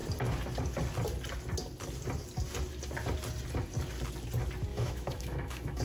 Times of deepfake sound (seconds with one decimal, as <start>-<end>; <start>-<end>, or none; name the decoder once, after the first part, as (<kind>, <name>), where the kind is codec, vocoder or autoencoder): 4.7-5.8 (autoencoder, DAC-VAE)